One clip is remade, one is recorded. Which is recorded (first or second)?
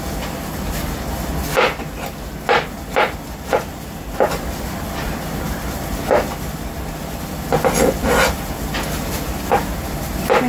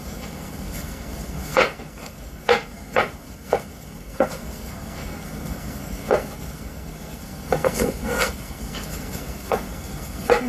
first